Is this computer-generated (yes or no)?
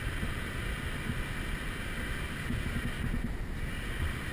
no